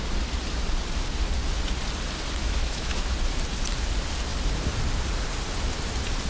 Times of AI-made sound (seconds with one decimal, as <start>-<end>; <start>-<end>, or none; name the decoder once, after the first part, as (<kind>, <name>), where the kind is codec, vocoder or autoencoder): 2.4-3.1 (autoencoder, DAC-VAE)